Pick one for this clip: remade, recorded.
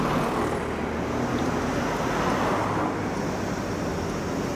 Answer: recorded